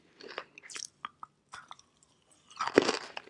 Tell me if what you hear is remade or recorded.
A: recorded